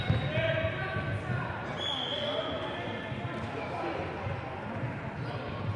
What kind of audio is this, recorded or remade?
recorded